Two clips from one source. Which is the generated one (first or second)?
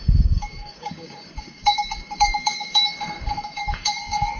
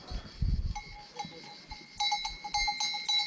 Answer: first